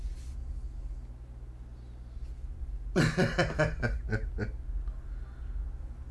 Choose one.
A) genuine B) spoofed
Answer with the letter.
A